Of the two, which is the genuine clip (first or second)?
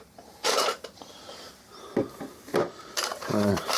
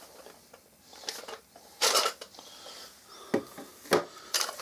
second